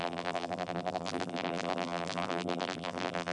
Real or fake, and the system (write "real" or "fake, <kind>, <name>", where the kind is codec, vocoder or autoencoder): fake, vocoder, BigVGAN v2